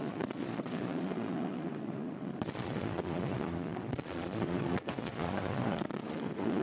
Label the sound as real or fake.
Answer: fake